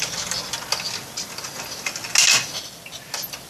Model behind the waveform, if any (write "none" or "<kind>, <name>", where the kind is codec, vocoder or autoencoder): none